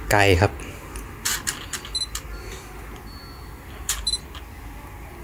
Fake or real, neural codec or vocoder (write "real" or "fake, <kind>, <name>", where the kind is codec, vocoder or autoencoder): real